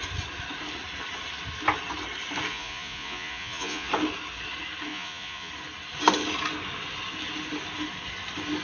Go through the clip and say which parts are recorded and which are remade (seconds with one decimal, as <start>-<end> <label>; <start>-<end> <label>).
0.0-2.5 recorded; 2.5-3.9 remade; 3.9-4.9 recorded; 4.9-5.5 remade; 5.5-8.6 recorded